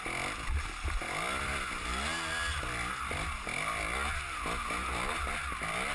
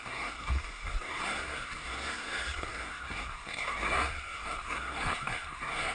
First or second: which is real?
first